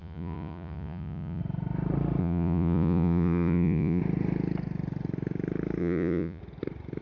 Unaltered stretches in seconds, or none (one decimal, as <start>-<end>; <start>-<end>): 1.4-2.2; 4.0-5.8; 6.4-7.0